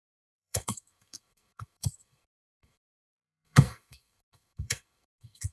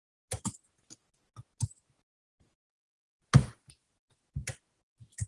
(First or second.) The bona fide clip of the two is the second